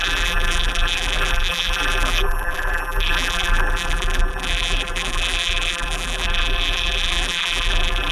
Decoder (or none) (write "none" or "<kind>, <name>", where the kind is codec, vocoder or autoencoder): vocoder, BigVGAN v2